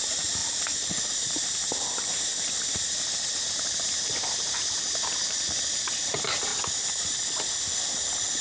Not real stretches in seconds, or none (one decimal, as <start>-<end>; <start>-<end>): 0.0-2.3; 3.5-6.5